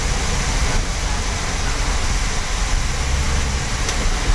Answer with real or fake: real